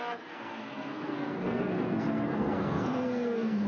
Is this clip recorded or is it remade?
remade